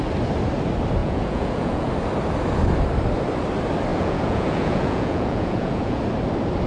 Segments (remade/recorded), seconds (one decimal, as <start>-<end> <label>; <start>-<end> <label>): 0.0-1.0 recorded; 1.0-1.9 remade; 1.9-3.9 recorded; 3.9-6.0 remade; 6.0-6.7 recorded